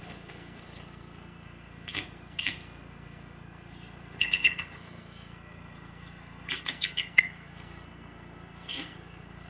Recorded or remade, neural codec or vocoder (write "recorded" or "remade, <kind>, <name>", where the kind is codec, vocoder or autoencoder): remade, codec, SNAC